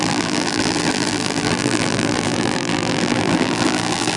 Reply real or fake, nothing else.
fake